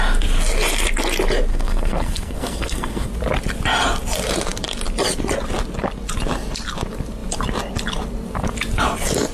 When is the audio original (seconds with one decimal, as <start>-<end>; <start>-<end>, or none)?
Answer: 0.0-1.5; 3.1-9.3